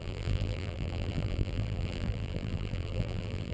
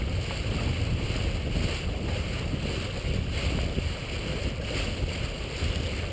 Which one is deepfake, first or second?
first